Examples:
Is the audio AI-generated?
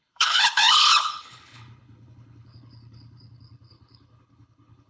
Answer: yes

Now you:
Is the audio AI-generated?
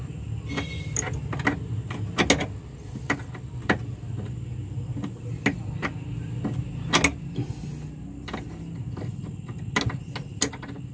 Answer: no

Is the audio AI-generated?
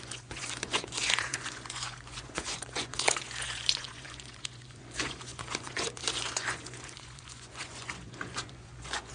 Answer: yes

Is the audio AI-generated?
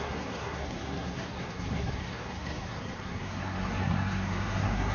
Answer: yes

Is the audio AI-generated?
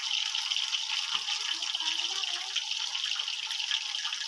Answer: no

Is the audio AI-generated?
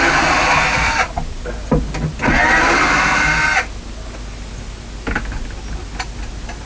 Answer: no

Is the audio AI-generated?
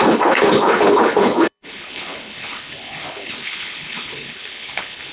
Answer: yes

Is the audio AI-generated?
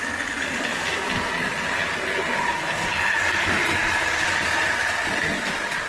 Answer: no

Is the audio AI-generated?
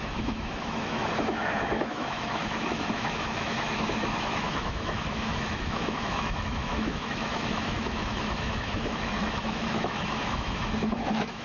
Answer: yes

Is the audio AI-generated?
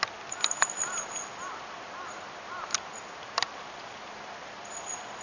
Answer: no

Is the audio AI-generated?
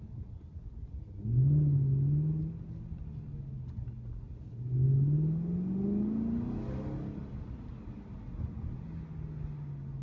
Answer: no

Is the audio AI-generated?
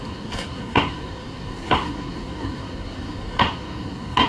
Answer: yes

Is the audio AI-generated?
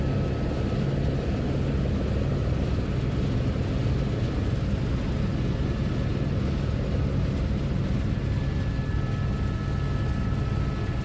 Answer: no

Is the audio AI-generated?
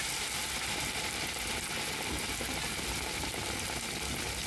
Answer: no